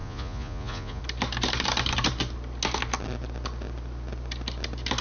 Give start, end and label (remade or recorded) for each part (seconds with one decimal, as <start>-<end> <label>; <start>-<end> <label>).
0.0-1.0 remade; 1.0-5.0 recorded